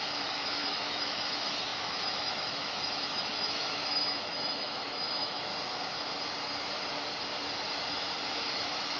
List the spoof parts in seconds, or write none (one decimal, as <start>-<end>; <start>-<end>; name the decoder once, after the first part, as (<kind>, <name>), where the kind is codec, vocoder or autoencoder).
0.0-5.5 (autoencoder, DAC-VAE); 8.5-9.0